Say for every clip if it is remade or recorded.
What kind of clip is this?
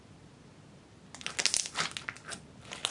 recorded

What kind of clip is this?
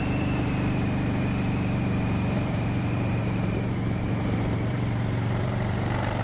remade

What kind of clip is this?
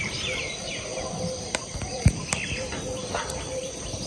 remade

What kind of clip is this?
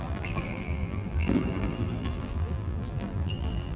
remade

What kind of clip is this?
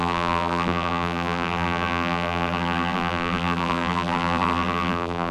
remade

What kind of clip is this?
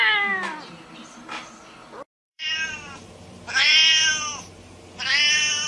remade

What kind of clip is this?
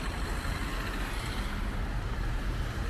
recorded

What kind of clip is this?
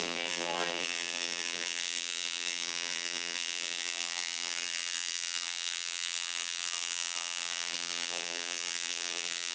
remade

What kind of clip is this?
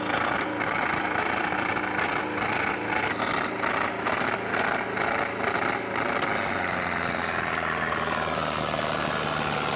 recorded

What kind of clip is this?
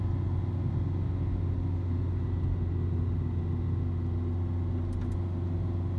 recorded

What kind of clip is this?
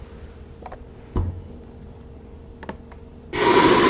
recorded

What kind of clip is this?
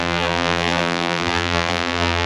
remade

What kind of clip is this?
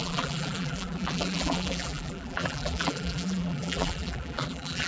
remade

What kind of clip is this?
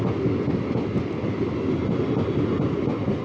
recorded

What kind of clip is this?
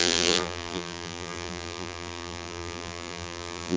remade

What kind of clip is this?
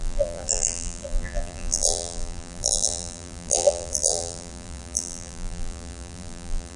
remade